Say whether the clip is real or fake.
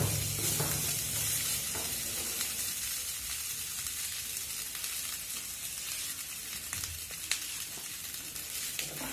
real